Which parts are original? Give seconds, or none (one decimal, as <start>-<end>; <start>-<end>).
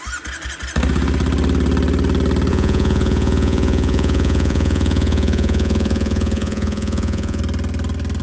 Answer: 0.0-2.5; 7.4-8.2